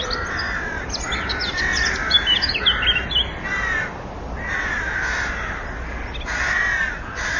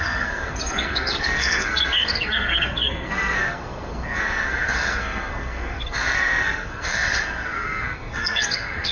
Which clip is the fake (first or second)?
second